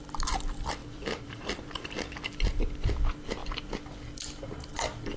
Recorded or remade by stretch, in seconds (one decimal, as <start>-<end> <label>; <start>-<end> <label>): 0.0-0.8 recorded; 0.8-1.4 remade; 1.4-5.2 recorded